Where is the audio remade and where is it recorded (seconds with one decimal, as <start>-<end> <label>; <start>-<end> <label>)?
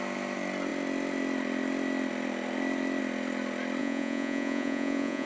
0.0-3.8 recorded; 3.8-5.3 remade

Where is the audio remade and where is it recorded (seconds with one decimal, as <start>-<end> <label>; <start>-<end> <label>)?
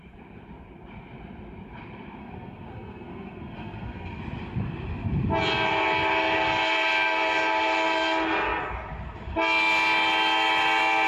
0.0-2.2 recorded; 2.2-4.2 remade; 4.2-11.1 recorded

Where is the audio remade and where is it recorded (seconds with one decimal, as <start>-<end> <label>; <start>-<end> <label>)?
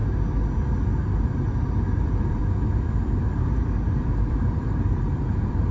0.0-1.0 recorded; 1.0-2.4 remade; 2.4-3.2 recorded; 3.2-5.7 remade